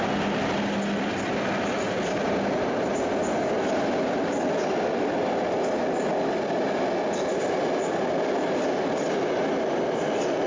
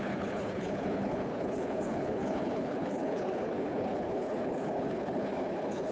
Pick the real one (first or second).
first